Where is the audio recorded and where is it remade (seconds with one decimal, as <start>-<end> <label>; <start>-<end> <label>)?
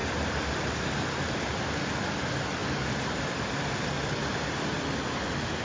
0.0-1.8 remade; 1.8-2.6 recorded; 2.6-3.8 remade; 3.8-5.6 recorded